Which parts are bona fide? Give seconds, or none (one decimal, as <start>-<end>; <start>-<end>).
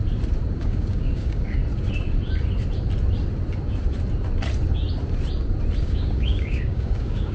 0.0-0.6; 1.6-5.8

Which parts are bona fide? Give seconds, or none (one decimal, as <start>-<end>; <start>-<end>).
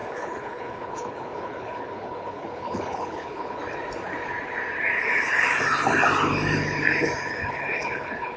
3.6-7.2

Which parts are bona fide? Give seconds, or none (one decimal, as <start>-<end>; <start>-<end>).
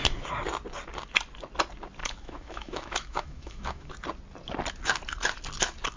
0.0-2.0; 3.9-6.0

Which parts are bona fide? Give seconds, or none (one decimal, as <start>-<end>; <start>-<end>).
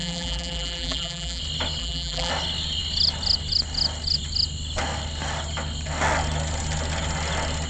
1.4-1.8; 2.3-7.7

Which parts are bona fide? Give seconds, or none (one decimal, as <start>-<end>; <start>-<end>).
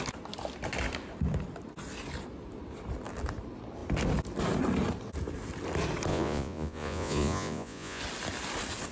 0.0-6.1; 8.0-8.9